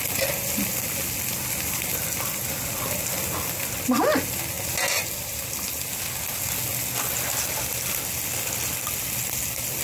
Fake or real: real